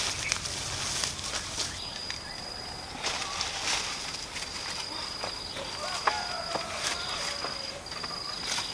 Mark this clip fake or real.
real